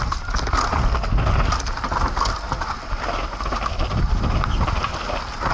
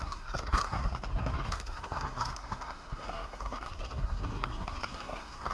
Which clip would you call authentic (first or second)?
first